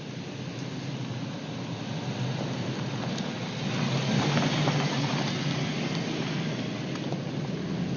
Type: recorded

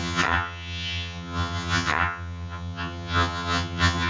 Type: remade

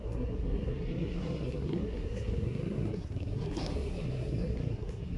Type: remade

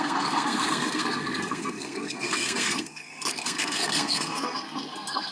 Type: remade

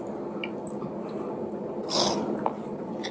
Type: recorded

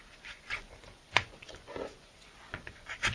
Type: remade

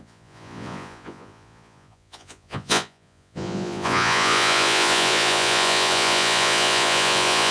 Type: remade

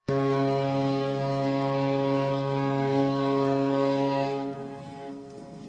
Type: remade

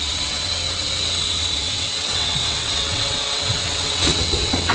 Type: remade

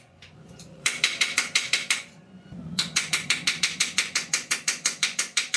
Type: remade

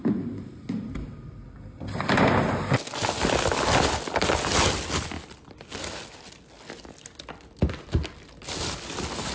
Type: recorded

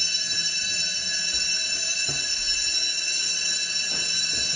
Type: recorded